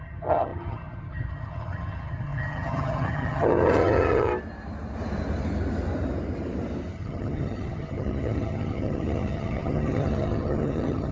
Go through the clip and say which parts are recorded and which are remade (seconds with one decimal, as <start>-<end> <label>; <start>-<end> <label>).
0.0-4.3 remade; 4.3-6.9 recorded; 6.9-11.1 remade